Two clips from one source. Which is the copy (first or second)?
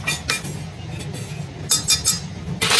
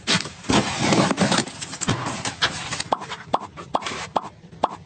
second